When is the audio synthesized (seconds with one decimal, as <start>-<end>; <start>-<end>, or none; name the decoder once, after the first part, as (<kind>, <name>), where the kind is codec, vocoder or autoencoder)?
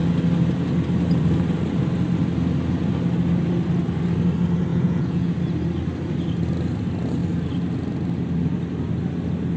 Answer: 4.7-5.4 (vocoder, Vocos)